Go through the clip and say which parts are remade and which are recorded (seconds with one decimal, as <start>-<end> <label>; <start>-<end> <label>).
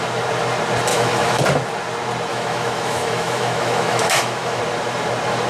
0.0-0.9 recorded; 0.9-1.4 remade; 1.4-2.3 recorded; 2.3-4.6 remade; 4.6-5.5 recorded